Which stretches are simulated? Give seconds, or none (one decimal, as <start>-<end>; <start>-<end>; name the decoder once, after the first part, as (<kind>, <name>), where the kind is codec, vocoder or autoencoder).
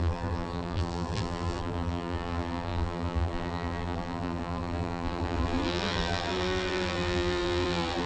0.0-8.1 (vocoder, BigVGAN v2)